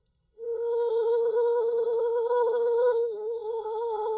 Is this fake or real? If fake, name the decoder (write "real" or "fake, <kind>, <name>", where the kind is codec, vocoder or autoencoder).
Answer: fake, codec, SNAC